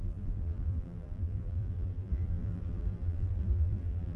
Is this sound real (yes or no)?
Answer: no